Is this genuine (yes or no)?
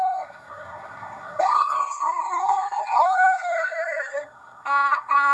no